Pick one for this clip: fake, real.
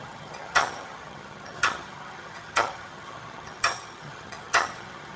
fake